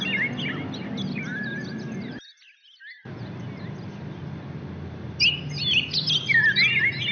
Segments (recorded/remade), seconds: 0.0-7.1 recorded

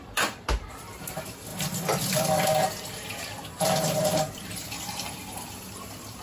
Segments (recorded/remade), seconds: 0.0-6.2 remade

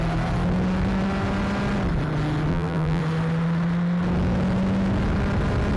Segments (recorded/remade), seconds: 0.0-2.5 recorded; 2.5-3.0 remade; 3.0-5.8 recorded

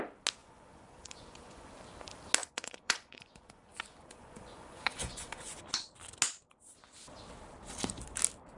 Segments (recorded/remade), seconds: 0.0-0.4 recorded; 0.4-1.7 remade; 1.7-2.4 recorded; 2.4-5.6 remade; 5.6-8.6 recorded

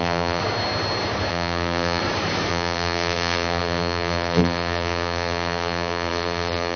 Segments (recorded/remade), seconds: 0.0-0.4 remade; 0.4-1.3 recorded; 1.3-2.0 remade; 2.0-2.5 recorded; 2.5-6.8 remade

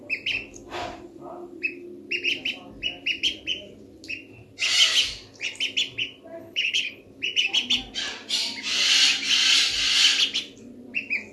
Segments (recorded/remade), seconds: 0.0-6.4 recorded; 6.4-7.0 remade; 7.0-11.3 recorded

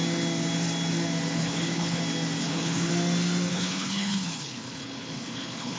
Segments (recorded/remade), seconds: 0.0-1.4 recorded; 1.4-2.0 remade; 2.0-2.4 recorded; 2.4-2.9 remade; 2.9-3.5 recorded; 3.5-5.8 remade

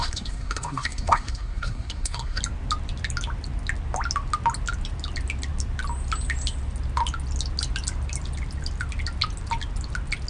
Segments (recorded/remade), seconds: 0.0-2.4 remade; 2.4-10.3 recorded